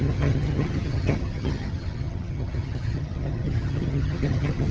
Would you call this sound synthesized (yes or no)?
yes